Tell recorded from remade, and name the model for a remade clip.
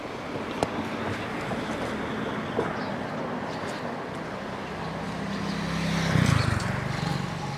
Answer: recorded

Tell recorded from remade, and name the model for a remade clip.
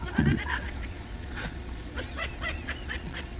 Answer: remade, vocoder, Vocos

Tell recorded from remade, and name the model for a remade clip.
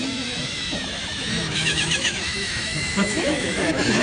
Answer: remade, autoencoder, DAC-VAE